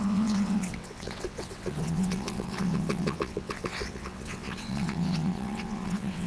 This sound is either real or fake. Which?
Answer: fake